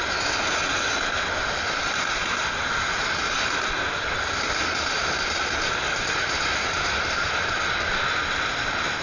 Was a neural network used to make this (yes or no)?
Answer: no